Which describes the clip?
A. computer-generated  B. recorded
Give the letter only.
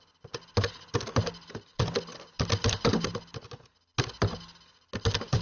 B